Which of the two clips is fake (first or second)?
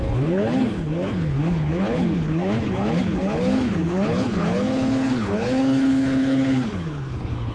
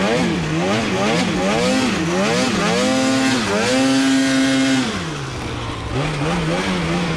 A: first